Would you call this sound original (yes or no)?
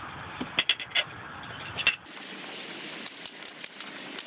yes